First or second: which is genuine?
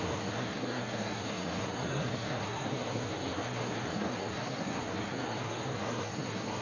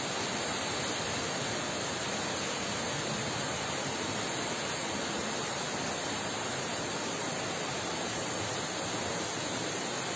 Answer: second